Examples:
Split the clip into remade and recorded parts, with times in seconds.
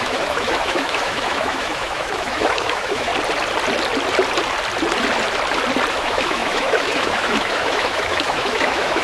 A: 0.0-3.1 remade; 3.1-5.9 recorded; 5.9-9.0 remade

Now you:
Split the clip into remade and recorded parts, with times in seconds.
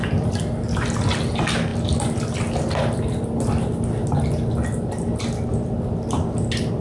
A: 0.0-6.8 recorded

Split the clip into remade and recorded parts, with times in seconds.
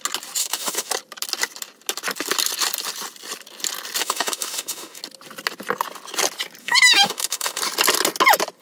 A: 0.0-0.4 recorded; 0.4-0.9 remade; 0.9-4.0 recorded; 4.0-5.0 remade; 5.0-6.6 recorded; 6.6-7.6 remade; 7.6-8.6 recorded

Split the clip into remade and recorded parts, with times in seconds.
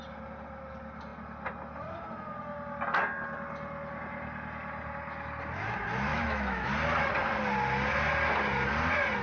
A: 0.0-6.1 recorded; 6.1-6.7 remade; 6.7-9.2 recorded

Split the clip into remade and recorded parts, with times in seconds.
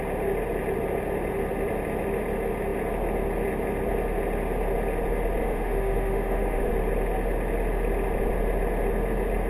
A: 0.0-5.4 recorded; 5.4-6.7 remade; 6.7-9.5 recorded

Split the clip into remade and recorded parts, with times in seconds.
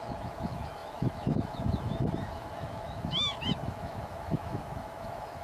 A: 0.0-5.4 remade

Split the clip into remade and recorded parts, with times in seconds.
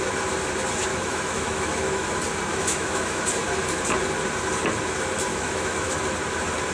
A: 0.0-0.9 recorded; 0.9-2.1 remade; 2.1-2.5 recorded; 2.5-3.2 remade; 3.2-5.3 recorded; 5.3-5.9 remade; 5.9-6.7 recorded